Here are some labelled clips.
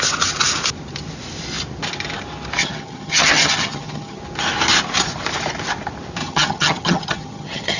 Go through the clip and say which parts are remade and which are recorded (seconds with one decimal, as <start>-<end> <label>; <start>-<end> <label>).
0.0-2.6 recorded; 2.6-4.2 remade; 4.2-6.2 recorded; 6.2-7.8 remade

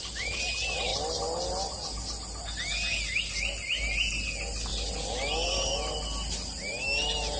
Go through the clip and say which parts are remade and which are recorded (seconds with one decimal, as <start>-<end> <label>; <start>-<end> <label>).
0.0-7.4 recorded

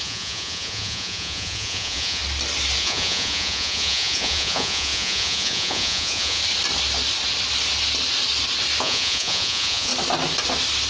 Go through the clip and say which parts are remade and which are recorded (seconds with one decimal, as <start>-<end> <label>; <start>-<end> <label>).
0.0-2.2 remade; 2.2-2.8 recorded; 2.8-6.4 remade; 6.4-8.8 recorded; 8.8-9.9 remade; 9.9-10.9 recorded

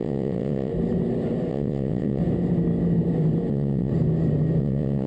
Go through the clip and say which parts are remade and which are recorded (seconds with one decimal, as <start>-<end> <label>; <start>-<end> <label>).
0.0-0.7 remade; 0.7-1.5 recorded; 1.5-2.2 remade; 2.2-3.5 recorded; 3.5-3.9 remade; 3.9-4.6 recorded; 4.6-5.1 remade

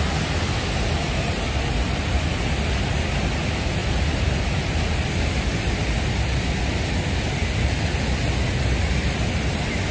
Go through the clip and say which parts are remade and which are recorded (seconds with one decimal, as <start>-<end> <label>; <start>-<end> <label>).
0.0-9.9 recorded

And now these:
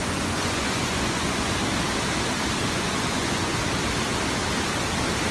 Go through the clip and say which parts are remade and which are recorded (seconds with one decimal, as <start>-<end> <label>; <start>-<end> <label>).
0.0-1.6 remade; 1.6-2.6 recorded; 2.6-3.6 remade; 3.6-5.3 recorded